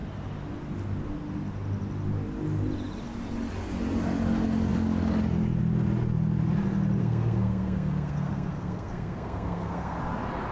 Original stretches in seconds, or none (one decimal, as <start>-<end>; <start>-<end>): 0.0-7.0; 10.0-10.5